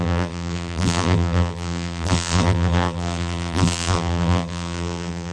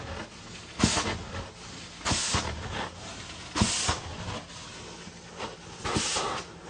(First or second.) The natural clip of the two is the second